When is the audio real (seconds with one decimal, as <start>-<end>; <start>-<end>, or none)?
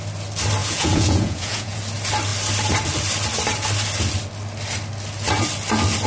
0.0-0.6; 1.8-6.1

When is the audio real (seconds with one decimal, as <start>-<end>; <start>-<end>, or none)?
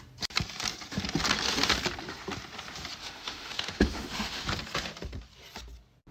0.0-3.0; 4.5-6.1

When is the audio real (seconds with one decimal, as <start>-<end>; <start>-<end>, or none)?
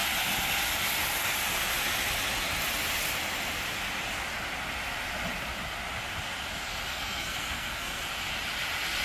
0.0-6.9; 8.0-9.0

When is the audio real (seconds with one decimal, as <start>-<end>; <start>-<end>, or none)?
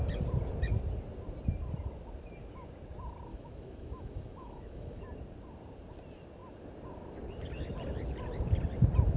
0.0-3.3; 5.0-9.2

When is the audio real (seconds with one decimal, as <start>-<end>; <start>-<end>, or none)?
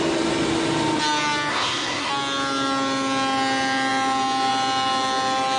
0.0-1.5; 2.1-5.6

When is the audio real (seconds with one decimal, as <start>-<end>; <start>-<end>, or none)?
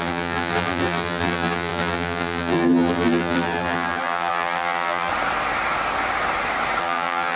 5.1-6.8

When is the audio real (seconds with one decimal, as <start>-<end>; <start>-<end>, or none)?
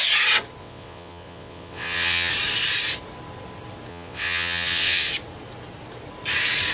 0.0-0.6; 2.3-3.9; 5.1-6.7